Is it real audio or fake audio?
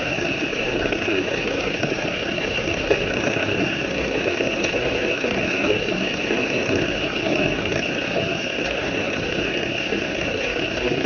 fake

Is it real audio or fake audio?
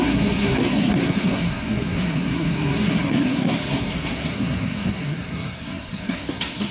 fake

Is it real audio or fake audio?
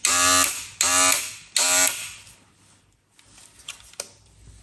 real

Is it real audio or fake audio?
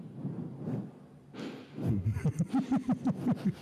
real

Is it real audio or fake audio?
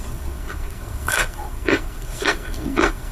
fake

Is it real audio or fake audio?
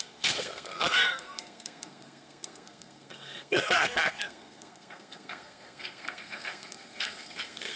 fake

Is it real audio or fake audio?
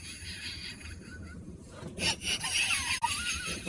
real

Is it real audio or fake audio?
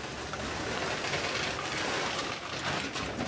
real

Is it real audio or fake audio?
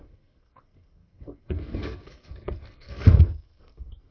fake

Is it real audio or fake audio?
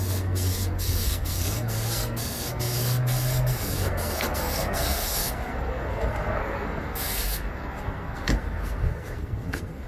fake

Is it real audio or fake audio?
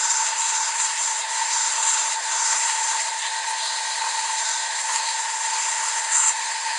fake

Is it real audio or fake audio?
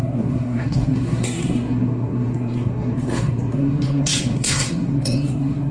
fake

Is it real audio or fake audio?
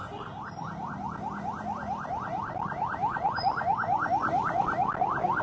real